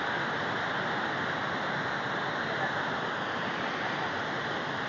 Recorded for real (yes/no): yes